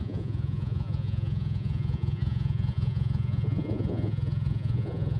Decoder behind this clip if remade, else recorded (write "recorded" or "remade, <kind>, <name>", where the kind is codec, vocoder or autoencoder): remade, vocoder, Vocos